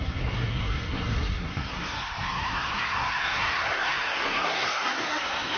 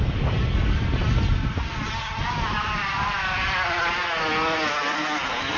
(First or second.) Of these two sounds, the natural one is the second